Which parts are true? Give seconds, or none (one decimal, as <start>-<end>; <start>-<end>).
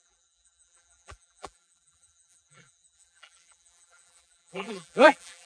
none